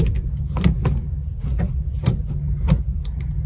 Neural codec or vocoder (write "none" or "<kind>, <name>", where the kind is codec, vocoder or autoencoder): none